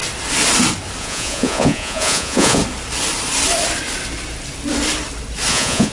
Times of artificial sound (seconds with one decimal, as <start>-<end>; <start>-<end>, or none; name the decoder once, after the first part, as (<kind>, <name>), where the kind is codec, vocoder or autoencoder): 1.0-2.6 (vocoder, Vocos); 5.5-5.9